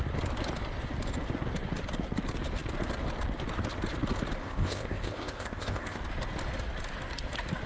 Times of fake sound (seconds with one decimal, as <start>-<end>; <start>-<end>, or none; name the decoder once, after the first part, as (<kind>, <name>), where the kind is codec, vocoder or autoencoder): 4.4-6.0 (codec, ZipCodec)